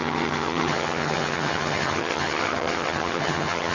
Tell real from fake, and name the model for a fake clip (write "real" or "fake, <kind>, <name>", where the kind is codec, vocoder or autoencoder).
fake, vocoder, HiFi-GAN